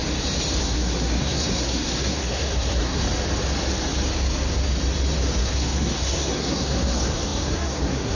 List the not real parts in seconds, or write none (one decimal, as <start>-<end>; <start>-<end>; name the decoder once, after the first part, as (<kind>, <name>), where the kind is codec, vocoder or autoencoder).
0.6-3.0 (codec, SNAC); 5.4-8.1